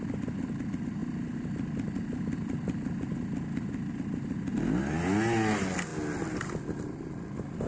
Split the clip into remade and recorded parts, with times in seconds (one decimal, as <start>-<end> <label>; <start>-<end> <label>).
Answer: 0.0-7.7 recorded